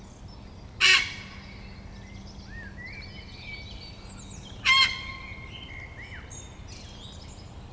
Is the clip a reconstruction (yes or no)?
no